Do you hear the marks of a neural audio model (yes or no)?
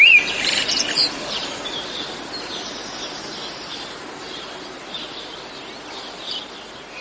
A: no